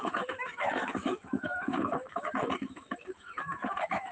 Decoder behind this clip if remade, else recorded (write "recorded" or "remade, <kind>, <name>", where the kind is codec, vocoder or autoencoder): remade, autoencoder, DAC-VAE